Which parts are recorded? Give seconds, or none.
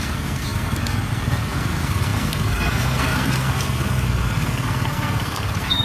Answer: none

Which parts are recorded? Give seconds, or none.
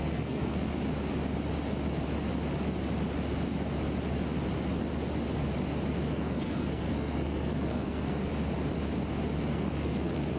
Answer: 0.7-5.9; 8.3-9.4